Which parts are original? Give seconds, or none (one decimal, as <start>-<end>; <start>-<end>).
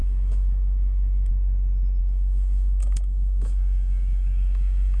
1.3-2.0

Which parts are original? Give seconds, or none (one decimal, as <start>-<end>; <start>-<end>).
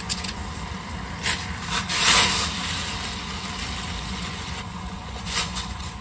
0.4-4.0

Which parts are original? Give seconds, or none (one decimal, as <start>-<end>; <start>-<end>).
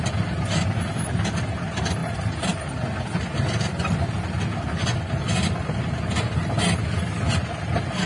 0.0-8.1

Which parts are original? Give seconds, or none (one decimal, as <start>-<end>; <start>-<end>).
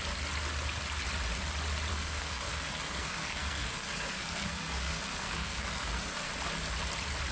0.0-1.9; 6.3-7.3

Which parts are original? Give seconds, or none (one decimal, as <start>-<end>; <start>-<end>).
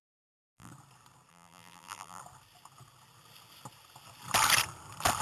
0.7-1.3; 2.2-5.2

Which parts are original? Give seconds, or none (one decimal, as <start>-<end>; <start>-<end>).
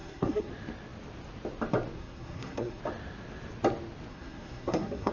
0.5-2.0; 2.8-4.1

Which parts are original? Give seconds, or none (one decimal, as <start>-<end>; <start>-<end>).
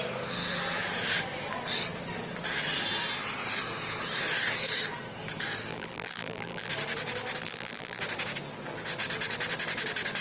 0.0-5.7; 6.7-7.4; 8.0-10.2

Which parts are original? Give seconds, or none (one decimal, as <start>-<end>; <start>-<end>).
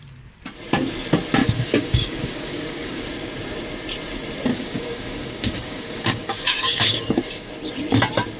0.0-1.4; 3.0-4.5; 7.5-8.4